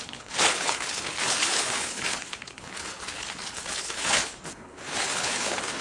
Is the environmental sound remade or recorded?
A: remade